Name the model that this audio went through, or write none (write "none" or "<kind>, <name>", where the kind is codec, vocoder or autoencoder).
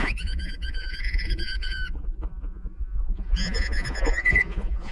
vocoder, Vocos